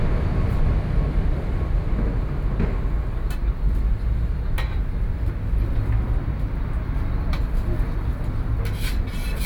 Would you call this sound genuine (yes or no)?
yes